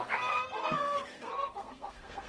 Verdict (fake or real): fake